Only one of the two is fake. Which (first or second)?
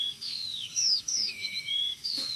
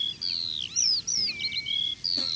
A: first